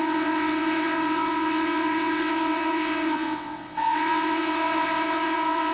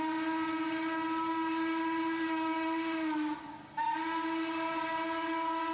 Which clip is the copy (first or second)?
first